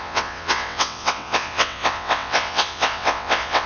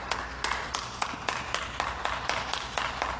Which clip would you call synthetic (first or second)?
first